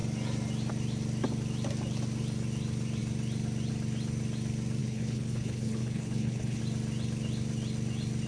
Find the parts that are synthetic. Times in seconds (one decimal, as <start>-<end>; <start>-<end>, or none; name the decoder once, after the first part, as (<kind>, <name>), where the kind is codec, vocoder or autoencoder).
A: 4.8-6.6 (codec, HILCodec)